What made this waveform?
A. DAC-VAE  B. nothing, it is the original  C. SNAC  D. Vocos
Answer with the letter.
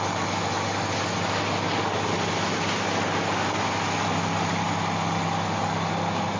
B